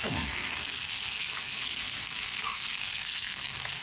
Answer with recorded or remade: remade